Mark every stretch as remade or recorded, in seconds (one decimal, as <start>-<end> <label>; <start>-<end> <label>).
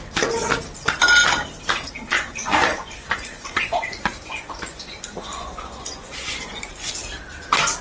0.0-2.4 recorded; 2.4-6.9 remade; 6.9-7.8 recorded